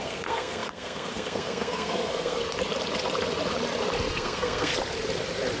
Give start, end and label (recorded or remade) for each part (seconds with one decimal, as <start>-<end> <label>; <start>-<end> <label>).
0.0-2.4 remade; 2.4-4.1 recorded; 4.1-4.7 remade; 4.7-5.6 recorded